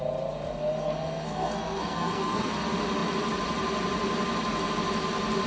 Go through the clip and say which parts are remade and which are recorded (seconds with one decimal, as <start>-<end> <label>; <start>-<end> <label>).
0.0-0.8 recorded; 0.8-2.5 remade; 2.5-5.5 recorded

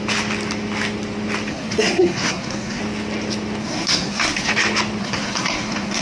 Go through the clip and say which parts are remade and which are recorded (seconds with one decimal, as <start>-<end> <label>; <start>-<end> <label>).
0.0-1.5 recorded; 1.5-2.8 remade; 2.8-3.6 recorded; 3.6-4.5 remade; 4.5-5.0 recorded; 5.0-6.0 remade

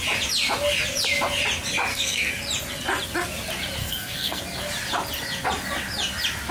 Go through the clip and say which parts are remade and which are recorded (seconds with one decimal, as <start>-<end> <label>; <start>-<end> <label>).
0.0-1.9 recorded; 1.9-2.4 remade; 2.4-3.8 recorded; 3.8-4.4 remade; 4.4-6.5 recorded